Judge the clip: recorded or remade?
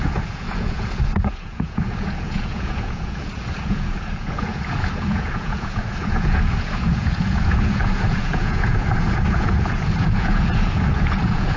remade